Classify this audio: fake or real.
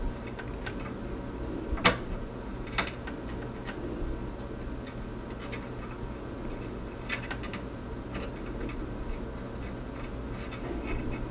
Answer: real